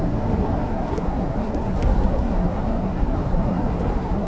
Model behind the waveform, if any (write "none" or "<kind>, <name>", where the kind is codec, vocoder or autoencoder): codec, SNAC